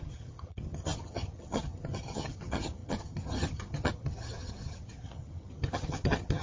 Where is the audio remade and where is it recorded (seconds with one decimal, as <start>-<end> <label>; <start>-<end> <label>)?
0.0-6.4 remade